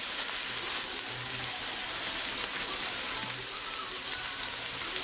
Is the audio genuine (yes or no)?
yes